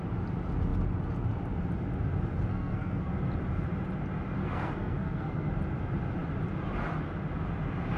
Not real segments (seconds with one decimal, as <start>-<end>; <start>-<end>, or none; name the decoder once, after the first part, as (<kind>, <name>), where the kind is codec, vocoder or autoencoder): 2.5-3.1 (codec, SNAC); 4.4-5.5